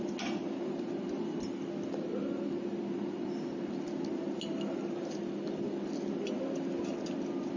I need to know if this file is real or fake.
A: real